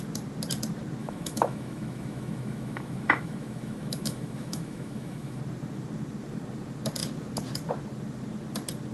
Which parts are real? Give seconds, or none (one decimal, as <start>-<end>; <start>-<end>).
0.0-1.0; 5.4-8.9